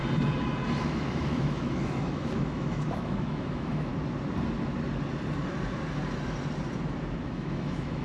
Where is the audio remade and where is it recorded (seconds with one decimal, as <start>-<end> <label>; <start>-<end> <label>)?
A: 0.0-0.8 recorded; 0.8-3.9 remade; 3.9-7.2 recorded; 7.2-8.0 remade